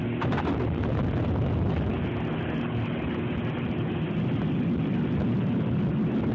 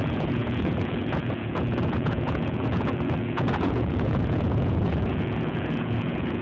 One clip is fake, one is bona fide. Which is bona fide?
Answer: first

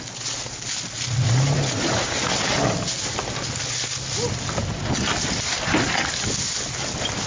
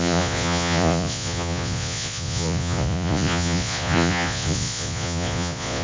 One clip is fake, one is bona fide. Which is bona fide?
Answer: first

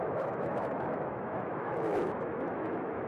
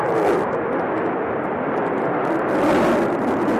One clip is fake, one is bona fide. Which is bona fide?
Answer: second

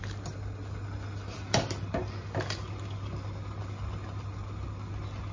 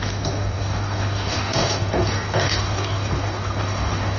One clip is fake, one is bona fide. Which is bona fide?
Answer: first